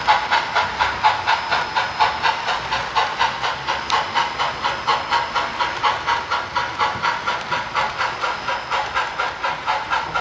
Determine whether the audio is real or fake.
real